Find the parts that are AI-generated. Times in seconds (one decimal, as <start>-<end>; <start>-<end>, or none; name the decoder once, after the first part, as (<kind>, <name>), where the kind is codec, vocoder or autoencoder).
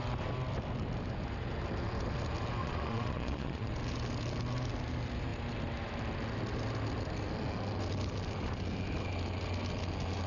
2.6-3.7 (vocoder, Vocos)